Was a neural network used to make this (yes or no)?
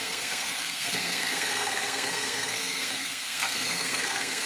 yes